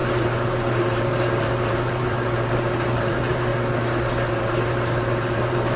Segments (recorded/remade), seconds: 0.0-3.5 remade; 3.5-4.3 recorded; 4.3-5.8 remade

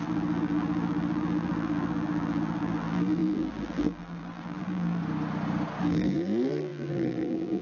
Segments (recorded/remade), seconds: 0.0-5.0 remade; 5.0-5.8 recorded; 5.8-7.6 remade

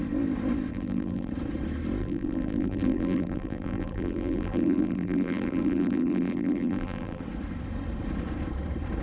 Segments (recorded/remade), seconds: 0.0-0.7 recorded; 0.7-1.3 remade; 1.3-2.0 recorded; 2.0-7.2 remade; 7.2-9.0 recorded

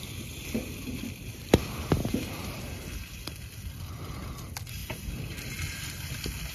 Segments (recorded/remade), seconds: 0.0-6.5 recorded

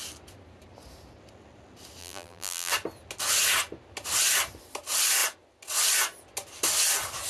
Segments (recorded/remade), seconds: 0.0-2.0 recorded; 2.0-2.7 remade; 2.7-7.3 recorded

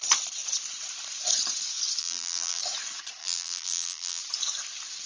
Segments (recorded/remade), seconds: 0.0-2.0 recorded; 2.0-2.6 remade; 2.6-3.2 recorded; 3.2-4.2 remade; 4.2-5.1 recorded

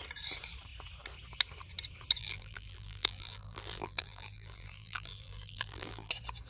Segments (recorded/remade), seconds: 0.0-2.2 recorded; 2.2-6.1 remade; 6.1-6.5 recorded

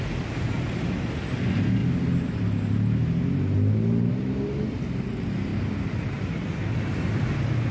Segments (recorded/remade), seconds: 0.0-5.5 recorded; 5.5-6.2 remade; 6.2-7.7 recorded